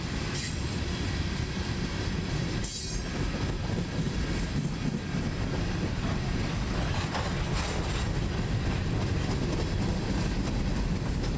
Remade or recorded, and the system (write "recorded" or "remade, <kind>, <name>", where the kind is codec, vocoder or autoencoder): recorded